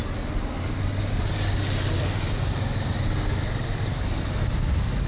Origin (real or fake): real